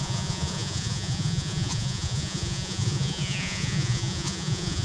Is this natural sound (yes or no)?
no